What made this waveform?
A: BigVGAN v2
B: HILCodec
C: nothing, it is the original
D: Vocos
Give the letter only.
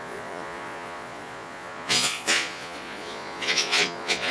D